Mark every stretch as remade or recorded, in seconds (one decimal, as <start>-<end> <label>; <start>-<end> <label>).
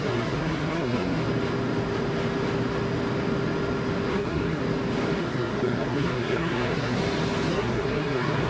0.0-1.2 remade; 1.2-4.1 recorded; 4.1-4.6 remade; 4.6-5.2 recorded; 5.2-7.0 remade; 7.0-7.5 recorded; 7.5-8.5 remade